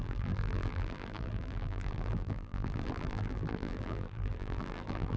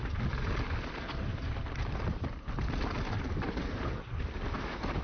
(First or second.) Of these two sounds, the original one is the second